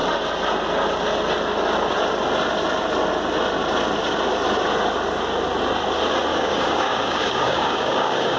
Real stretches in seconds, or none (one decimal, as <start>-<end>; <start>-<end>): 0.0-6.3